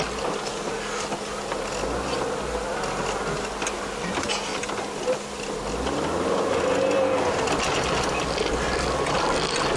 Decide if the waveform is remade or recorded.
recorded